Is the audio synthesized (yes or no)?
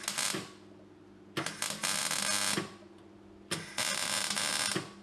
no